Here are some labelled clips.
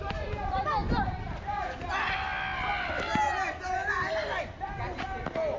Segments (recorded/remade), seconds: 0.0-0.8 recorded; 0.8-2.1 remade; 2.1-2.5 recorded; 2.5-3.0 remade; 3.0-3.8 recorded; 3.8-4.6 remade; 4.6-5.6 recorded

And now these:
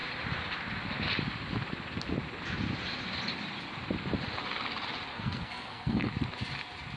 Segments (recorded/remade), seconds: 0.0-5.1 recorded; 5.1-6.1 remade; 6.1-7.0 recorded

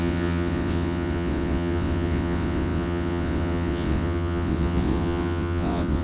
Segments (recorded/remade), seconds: 0.0-6.0 remade

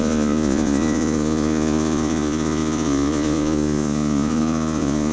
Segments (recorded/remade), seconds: 0.0-5.1 remade

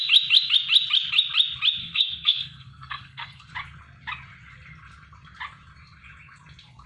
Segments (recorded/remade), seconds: 0.0-1.8 recorded; 1.8-3.5 remade; 3.5-6.9 recorded

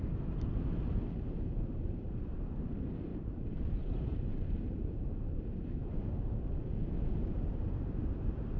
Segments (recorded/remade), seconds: 0.0-3.1 recorded; 3.1-5.3 remade; 5.3-8.6 recorded

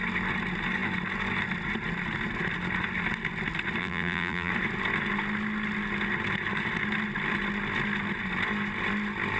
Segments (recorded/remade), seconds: 0.0-3.8 recorded; 3.8-4.5 remade; 4.5-9.4 recorded

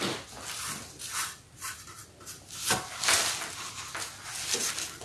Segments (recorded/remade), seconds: 0.0-5.0 recorded